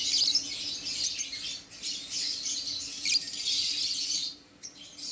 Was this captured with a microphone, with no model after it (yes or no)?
yes